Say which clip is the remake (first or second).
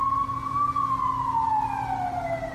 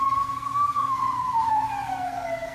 second